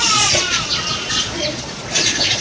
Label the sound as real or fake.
fake